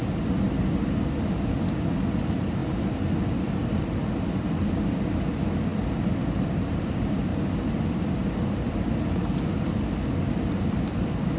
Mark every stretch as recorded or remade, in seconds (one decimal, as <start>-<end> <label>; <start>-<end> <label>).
0.0-11.4 recorded

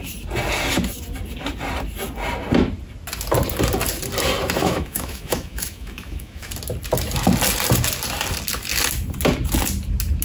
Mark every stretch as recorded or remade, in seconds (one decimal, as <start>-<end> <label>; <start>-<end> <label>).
0.0-4.6 recorded; 4.6-6.5 remade; 6.5-10.2 recorded